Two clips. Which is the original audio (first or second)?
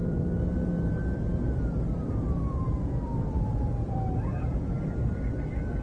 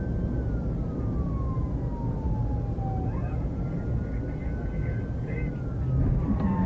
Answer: second